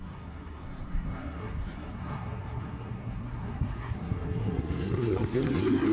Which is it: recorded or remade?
remade